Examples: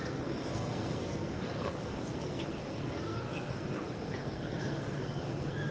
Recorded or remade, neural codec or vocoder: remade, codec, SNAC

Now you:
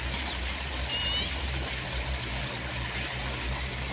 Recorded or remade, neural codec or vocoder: recorded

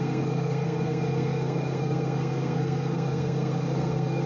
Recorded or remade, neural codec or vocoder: remade, codec, SNAC